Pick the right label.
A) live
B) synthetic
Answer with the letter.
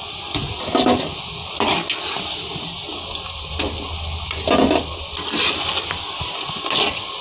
A